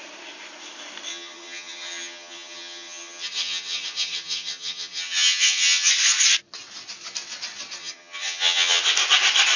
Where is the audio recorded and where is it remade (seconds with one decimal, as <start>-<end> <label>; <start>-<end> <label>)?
0.0-1.1 recorded; 1.1-5.9 remade; 5.9-7.8 recorded; 7.8-8.8 remade; 8.8-9.6 recorded